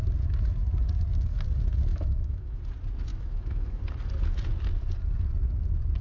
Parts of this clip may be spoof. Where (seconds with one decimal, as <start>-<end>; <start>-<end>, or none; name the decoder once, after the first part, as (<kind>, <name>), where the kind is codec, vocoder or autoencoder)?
1.9-2.6 (autoencoder, DAC-VAE); 3.1-3.8